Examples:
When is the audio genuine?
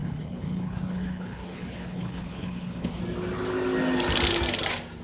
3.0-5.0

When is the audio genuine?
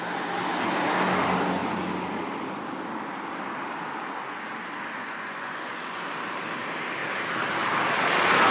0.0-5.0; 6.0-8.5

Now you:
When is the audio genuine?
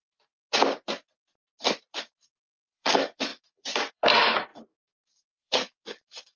0.0-2.3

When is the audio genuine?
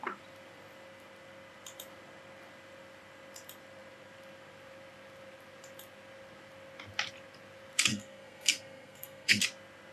0.0-7.9; 9.4-9.9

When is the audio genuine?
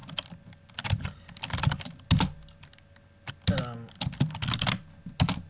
0.0-5.5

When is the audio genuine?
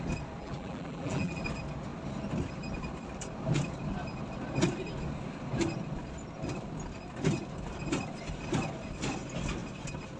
0.0-0.4; 1.4-10.2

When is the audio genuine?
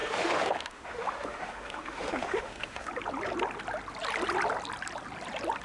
2.9-5.6